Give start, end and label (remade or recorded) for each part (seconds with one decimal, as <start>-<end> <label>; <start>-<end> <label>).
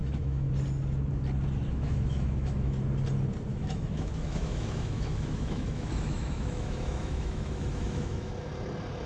0.0-0.5 remade; 0.5-1.7 recorded; 1.7-2.8 remade; 2.8-3.5 recorded; 3.5-8.3 remade; 8.3-9.1 recorded